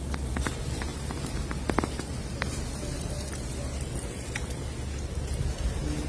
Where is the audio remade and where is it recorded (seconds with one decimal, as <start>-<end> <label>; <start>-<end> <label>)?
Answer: 0.0-6.1 recorded